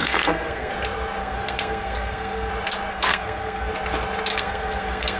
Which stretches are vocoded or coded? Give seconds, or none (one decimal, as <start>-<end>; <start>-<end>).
0.0-0.7; 1.2-2.5; 2.9-3.7; 4.3-5.2